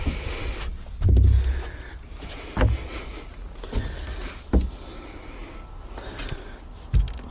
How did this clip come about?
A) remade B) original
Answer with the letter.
B